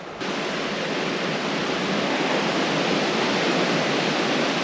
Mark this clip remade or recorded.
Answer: recorded